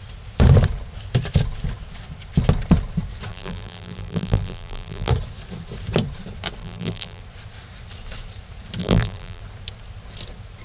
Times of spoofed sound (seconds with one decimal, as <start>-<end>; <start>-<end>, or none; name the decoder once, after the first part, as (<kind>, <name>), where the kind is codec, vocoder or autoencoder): 3.3-5.1 (vocoder, BigVGAN v2); 6.6-7.2; 8.8-9.4